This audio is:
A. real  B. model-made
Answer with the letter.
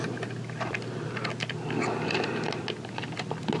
A